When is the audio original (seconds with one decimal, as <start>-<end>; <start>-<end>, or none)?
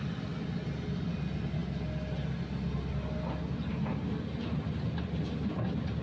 0.0-6.0